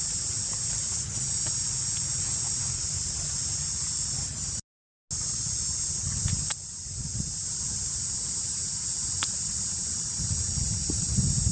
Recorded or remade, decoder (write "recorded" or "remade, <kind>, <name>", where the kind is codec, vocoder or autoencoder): recorded